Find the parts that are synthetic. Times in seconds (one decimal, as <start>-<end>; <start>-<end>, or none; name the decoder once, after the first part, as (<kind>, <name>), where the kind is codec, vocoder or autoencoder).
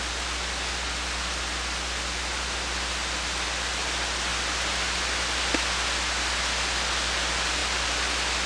none